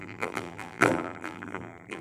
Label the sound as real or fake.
fake